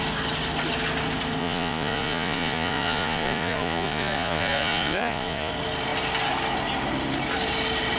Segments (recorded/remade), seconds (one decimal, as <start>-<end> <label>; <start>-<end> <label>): 0.0-1.4 recorded; 1.4-5.5 remade; 5.5-8.0 recorded